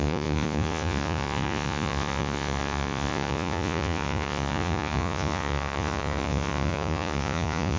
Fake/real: fake